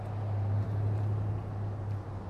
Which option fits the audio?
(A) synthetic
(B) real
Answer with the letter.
B